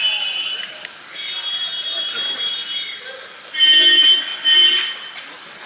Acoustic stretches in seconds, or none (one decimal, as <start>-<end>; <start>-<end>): 0.0-5.7